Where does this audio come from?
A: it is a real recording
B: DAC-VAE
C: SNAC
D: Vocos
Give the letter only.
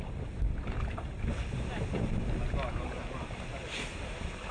A